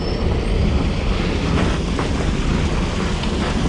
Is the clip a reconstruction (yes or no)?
no